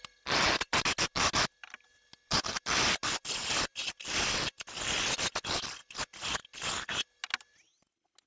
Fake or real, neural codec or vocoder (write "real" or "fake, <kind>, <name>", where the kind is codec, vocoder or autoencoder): real